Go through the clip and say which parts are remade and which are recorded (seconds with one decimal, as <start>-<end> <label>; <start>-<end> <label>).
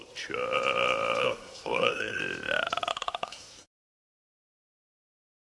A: 0.0-1.2 recorded; 1.2-2.2 remade; 2.2-2.9 recorded; 2.9-3.9 remade; 3.9-5.5 recorded